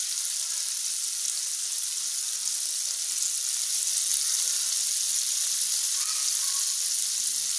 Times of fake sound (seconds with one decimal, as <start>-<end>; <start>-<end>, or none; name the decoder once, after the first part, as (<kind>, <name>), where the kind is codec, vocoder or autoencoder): none

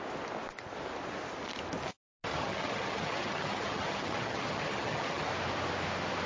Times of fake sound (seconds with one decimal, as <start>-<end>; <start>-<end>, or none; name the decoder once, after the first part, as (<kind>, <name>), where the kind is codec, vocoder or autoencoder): 2.3-5.3 (vocoder, HiFi-GAN)

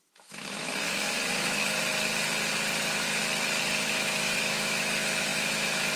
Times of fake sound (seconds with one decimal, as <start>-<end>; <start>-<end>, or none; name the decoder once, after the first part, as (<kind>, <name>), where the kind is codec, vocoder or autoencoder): 0.0-1.8 (autoencoder, DAC-VAE); 2.8-3.2; 3.8-6.0

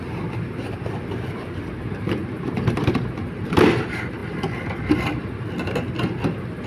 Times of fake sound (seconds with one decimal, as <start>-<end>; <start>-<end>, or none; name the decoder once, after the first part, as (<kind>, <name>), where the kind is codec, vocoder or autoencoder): 1.4-2.9 (vocoder, BigVGAN v2)